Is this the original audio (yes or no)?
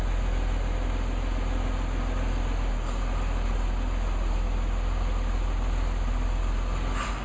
yes